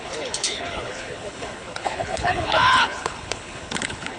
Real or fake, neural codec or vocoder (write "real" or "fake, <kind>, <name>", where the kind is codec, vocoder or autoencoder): fake, codec, HILCodec